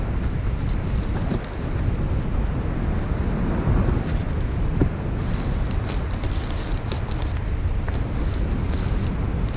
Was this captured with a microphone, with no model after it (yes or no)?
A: yes